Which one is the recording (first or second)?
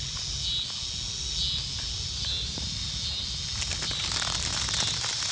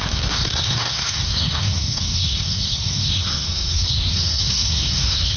first